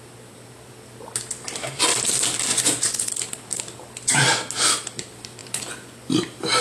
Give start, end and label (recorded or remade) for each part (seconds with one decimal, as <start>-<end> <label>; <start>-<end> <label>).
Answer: 0.0-2.5 recorded; 2.5-3.1 remade; 3.1-5.4 recorded; 5.4-6.1 remade; 6.1-6.6 recorded